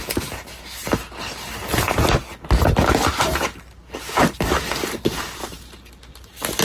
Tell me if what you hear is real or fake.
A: real